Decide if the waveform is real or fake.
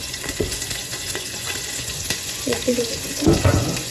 fake